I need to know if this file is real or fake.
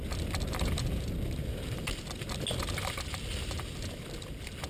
real